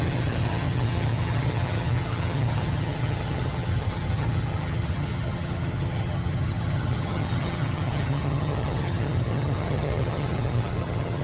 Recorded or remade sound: remade